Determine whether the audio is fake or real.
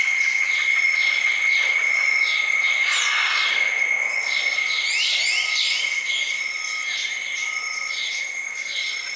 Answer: real